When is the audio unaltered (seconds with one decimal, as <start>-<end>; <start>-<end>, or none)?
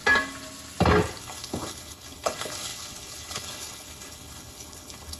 0.0-1.2